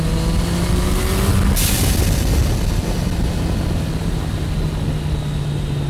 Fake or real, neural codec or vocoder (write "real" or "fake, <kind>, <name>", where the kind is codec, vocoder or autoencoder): real